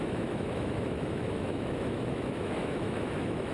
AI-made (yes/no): yes